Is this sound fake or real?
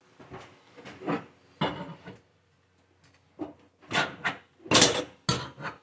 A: real